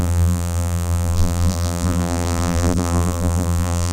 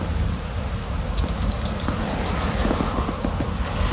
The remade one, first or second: first